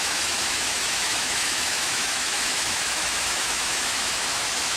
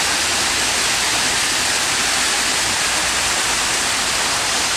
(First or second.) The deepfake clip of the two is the first